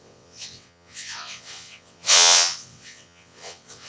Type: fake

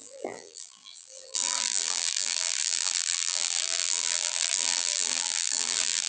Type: fake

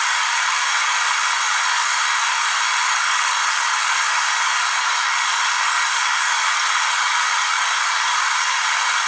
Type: fake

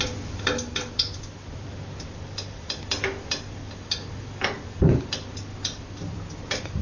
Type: fake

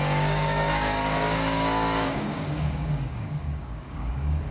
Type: fake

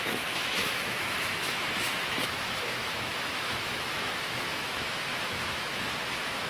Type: fake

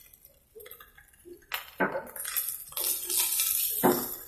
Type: real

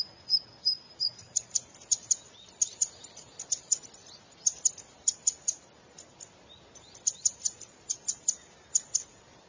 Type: real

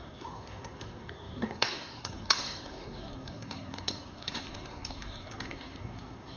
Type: fake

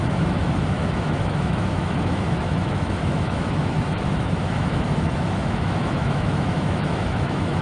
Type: fake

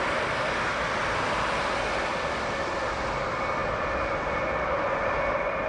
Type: real